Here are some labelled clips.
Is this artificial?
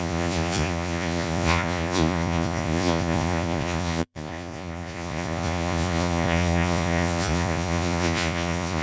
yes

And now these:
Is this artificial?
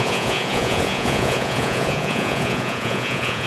yes